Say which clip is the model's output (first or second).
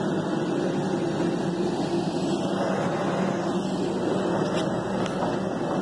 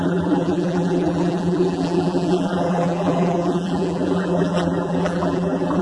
second